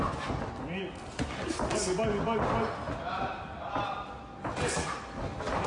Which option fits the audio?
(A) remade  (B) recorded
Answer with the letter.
B